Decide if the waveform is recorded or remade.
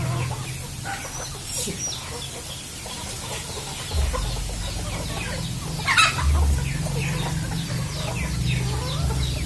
recorded